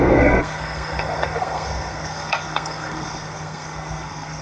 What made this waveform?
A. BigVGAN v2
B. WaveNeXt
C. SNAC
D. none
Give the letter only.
C